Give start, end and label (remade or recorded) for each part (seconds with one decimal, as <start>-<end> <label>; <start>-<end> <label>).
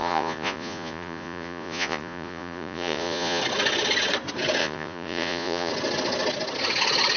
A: 0.0-3.4 remade; 3.4-4.6 recorded; 4.6-5.7 remade; 5.7-7.2 recorded